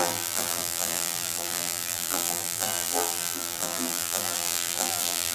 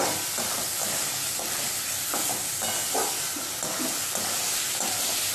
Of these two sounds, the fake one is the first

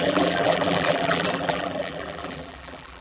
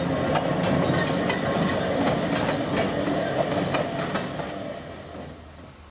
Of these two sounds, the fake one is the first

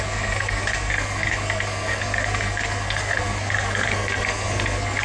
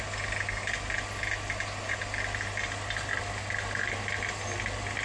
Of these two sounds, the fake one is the first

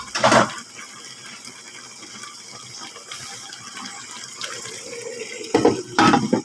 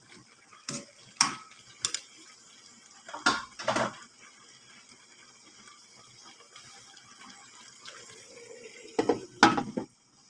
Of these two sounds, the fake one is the first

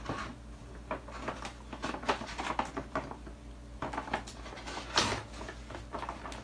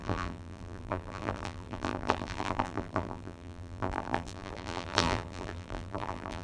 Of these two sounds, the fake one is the second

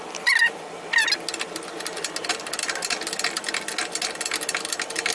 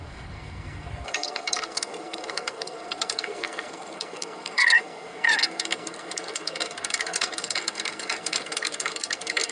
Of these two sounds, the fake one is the second